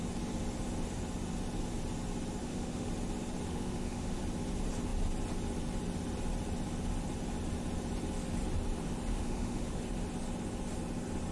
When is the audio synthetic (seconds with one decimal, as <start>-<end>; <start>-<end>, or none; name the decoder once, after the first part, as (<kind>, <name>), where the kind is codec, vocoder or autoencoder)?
2.4-2.9 (autoencoder, DAC-VAE); 3.5-4.2; 9.1-9.8